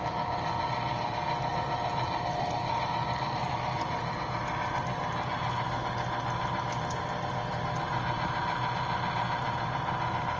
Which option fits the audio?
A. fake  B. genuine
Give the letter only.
B